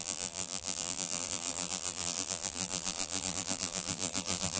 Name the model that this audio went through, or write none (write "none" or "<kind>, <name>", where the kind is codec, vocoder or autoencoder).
vocoder, BigVGAN v2